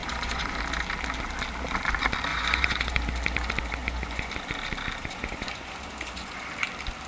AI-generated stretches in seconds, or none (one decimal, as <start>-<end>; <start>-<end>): 0.0-0.6; 2.3-3.0; 3.8-4.3; 5.0-6.4